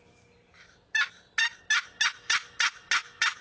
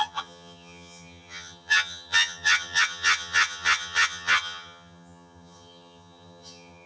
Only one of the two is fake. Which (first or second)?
second